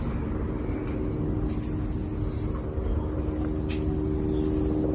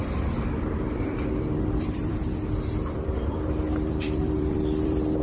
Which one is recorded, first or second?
first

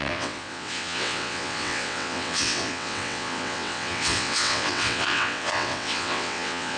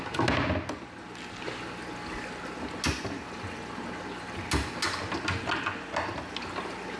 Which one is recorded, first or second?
second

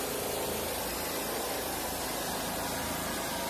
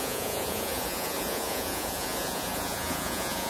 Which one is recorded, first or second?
first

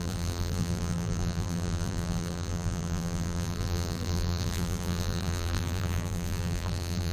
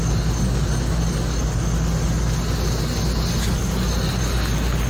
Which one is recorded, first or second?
second